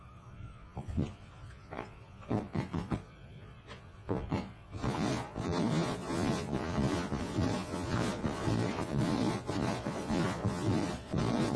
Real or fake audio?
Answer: fake